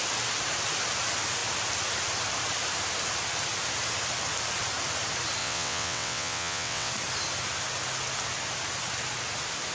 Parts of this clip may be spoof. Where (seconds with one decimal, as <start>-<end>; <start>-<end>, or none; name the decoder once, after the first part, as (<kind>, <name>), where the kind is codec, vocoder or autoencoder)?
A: 5.4-6.9 (vocoder, WaveNeXt)